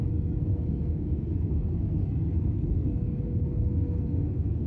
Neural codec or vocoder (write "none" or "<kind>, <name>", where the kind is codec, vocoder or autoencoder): codec, SNAC